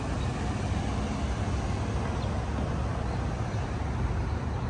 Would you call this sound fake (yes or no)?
no